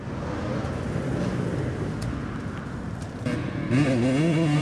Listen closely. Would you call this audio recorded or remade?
recorded